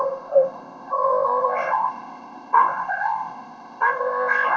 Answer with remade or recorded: remade